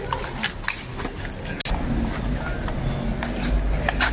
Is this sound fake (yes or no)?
no